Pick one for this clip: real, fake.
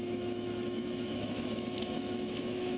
fake